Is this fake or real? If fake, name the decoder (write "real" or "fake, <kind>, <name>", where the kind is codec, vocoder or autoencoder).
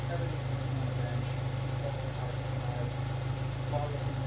real